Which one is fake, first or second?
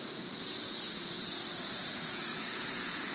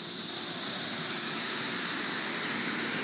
first